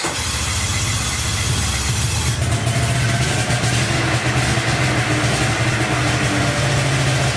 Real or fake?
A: real